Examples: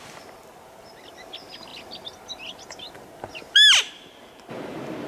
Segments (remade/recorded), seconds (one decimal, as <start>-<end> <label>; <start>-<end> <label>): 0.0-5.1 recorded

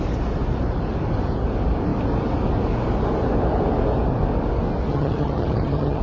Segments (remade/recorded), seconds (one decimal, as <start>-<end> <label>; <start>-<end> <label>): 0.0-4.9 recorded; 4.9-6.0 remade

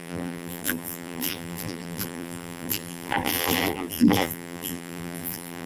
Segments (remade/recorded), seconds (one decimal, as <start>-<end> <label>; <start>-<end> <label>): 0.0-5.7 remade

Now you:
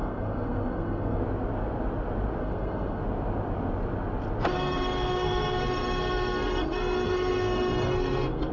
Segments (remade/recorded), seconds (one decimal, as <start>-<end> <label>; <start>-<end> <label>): 0.0-1.2 remade; 1.2-2.4 recorded; 2.4-3.0 remade; 3.0-4.5 recorded; 4.5-8.5 remade

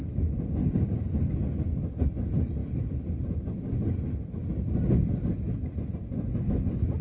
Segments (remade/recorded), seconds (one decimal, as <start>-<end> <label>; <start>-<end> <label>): 0.0-0.6 recorded; 0.6-1.3 remade; 1.3-7.0 recorded

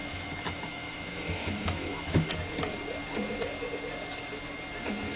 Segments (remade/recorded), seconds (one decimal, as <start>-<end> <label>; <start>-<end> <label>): 0.0-2.3 remade; 2.3-5.2 recorded

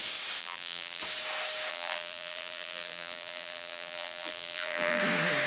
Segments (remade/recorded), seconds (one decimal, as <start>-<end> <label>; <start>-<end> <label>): 0.0-0.4 recorded; 0.4-1.0 remade; 1.0-1.7 recorded; 1.7-5.0 remade; 5.0-5.5 recorded